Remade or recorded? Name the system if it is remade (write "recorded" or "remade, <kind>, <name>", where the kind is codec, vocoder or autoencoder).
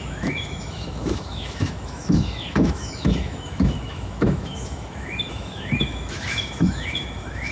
remade, autoencoder, DAC-VAE